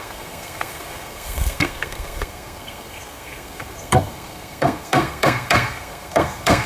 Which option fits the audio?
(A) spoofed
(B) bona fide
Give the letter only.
A